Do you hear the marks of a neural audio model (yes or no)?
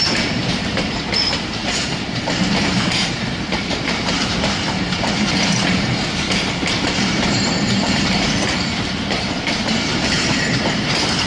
yes